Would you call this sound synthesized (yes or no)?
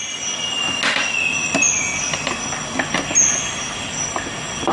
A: no